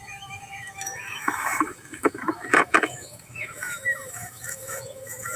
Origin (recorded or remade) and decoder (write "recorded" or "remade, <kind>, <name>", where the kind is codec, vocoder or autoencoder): remade, autoencoder, DAC-VAE